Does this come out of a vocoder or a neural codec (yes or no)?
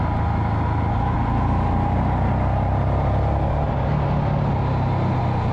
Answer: no